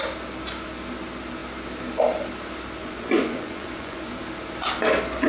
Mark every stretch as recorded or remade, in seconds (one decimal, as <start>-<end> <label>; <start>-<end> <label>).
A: 0.0-2.8 recorded; 2.8-4.1 remade; 4.1-5.3 recorded